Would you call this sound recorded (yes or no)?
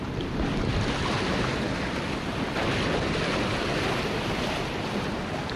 yes